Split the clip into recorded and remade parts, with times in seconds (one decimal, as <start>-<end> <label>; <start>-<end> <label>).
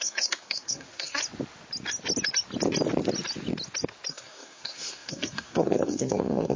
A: 0.0-1.2 remade; 1.2-4.1 recorded; 4.1-6.6 remade